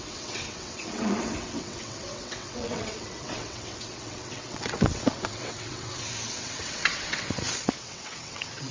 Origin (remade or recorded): remade